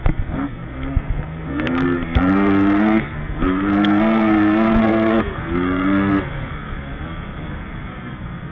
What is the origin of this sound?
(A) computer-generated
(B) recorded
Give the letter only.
A